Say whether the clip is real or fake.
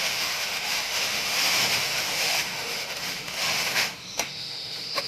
fake